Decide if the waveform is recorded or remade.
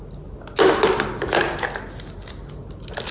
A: recorded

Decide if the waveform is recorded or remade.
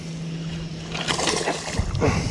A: recorded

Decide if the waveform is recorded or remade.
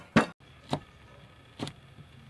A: recorded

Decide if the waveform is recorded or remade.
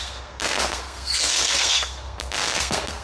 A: remade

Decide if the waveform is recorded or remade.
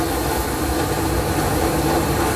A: recorded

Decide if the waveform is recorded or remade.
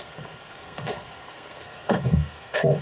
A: remade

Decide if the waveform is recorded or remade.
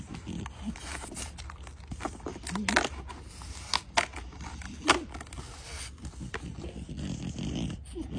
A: recorded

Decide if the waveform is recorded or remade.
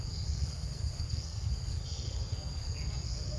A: remade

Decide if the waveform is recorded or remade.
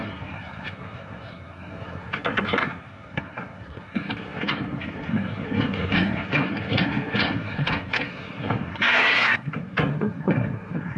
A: remade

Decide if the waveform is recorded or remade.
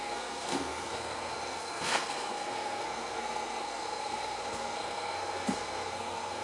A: remade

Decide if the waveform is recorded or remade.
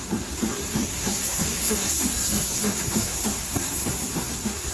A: remade